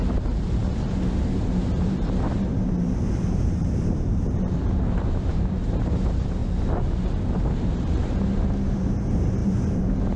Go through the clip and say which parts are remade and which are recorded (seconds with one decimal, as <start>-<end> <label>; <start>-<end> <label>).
0.0-1.2 recorded; 1.2-6.4 remade; 6.4-7.7 recorded; 7.7-10.2 remade